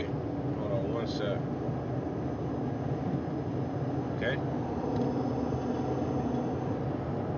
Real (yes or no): yes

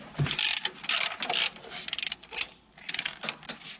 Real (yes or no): yes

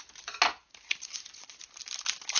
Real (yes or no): yes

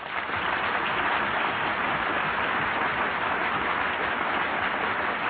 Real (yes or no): yes